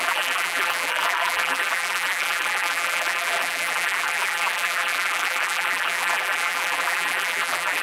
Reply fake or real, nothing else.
fake